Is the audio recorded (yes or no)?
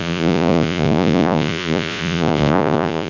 no